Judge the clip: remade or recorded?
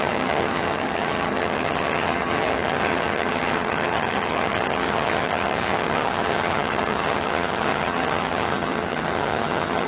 remade